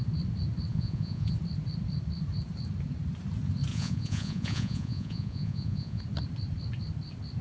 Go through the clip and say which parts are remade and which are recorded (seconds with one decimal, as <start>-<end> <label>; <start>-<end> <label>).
0.0-0.7 recorded; 0.7-1.3 remade; 1.3-3.7 recorded; 3.7-6.0 remade; 6.0-7.4 recorded